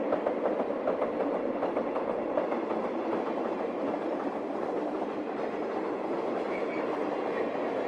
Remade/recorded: recorded